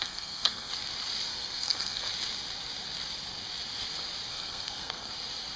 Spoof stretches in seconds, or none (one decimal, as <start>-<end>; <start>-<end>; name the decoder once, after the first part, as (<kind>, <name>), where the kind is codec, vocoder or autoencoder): 0.0-0.7 (codec, SNAC); 1.3-2.1; 4.3-5.1